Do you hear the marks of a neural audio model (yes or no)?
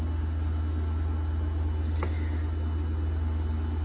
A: no